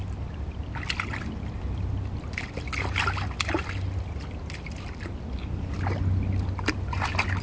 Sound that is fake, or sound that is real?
real